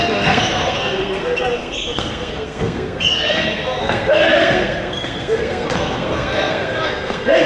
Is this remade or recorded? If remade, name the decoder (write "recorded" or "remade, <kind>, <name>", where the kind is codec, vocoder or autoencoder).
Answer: remade, codec, SNAC